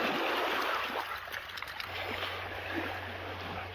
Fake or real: real